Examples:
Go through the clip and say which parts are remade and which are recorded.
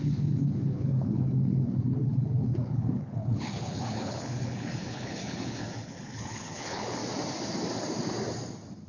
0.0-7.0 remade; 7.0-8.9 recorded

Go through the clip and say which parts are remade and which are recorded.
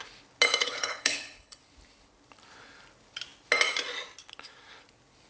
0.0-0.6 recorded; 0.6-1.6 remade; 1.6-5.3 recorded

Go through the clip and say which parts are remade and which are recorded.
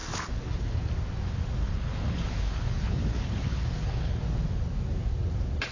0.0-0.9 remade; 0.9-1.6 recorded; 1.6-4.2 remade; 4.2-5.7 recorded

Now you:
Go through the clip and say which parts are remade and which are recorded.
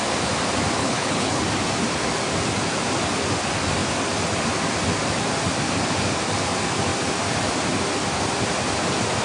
0.0-0.8 recorded; 0.8-1.4 remade; 1.4-9.2 recorded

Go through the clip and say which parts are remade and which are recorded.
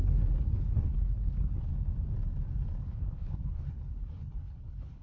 0.0-0.6 recorded; 0.6-1.7 remade; 1.7-2.8 recorded; 2.8-5.0 remade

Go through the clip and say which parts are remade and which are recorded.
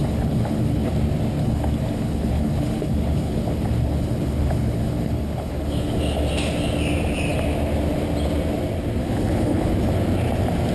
0.0-0.9 remade; 0.9-1.4 recorded; 1.4-6.0 remade; 6.0-9.0 recorded; 9.0-9.7 remade; 9.7-10.7 recorded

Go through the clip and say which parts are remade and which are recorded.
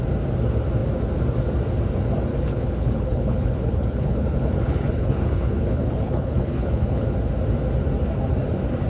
0.0-2.3 recorded; 2.3-7.1 remade; 7.1-8.9 recorded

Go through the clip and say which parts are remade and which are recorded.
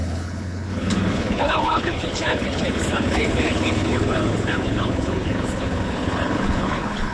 0.0-7.1 remade